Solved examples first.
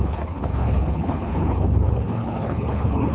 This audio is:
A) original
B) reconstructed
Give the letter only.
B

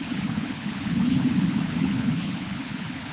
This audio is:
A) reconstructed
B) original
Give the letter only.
A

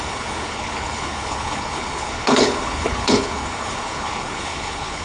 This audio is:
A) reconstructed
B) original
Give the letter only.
A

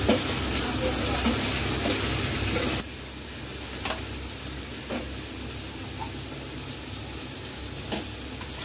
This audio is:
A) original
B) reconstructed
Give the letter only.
A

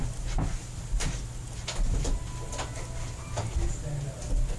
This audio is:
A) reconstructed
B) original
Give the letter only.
B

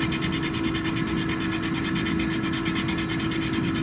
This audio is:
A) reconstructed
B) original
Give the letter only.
B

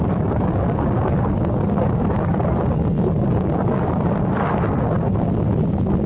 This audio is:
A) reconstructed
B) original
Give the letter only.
B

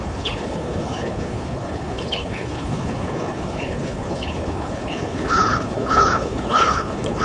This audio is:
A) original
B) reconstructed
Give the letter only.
B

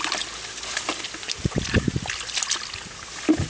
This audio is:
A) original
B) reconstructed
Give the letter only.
A